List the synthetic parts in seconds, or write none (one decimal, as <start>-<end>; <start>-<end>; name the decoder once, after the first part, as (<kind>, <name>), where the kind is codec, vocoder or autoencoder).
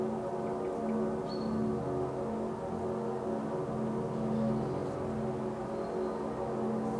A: none